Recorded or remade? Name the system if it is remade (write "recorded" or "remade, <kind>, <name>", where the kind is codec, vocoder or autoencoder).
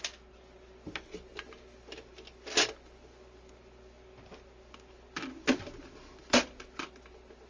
recorded